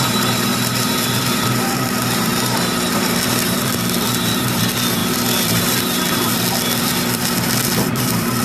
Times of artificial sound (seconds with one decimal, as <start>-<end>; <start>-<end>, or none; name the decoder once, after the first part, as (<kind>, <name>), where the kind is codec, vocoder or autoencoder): 0.0-2.3 (vocoder, BigVGAN v2); 2.9-8.4